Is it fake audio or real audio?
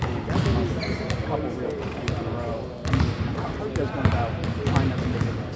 real